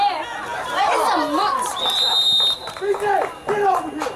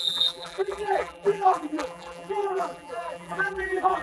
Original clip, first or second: first